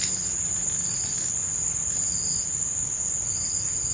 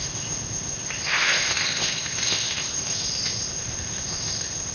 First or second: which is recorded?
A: first